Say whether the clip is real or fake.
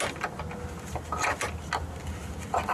real